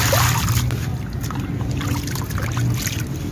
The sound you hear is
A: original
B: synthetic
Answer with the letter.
A